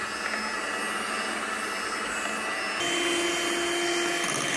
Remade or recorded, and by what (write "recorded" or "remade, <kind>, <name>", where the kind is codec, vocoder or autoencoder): recorded